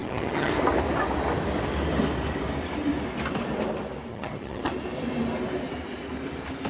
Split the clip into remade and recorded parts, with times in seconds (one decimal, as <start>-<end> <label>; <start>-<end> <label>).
0.0-0.5 remade; 0.5-4.1 recorded; 4.1-4.7 remade; 4.7-6.7 recorded